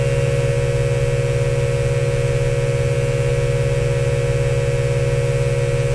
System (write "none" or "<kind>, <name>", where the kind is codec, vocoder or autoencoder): none